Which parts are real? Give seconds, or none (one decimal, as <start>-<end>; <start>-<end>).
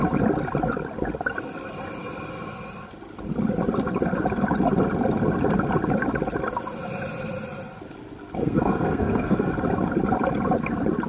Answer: 0.0-8.4; 9.5-11.1